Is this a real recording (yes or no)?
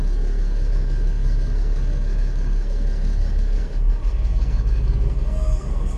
no